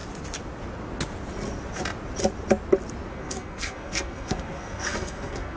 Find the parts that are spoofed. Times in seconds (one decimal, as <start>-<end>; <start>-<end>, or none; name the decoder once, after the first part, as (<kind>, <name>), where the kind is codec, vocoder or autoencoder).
3.1-5.6 (codec, SNAC)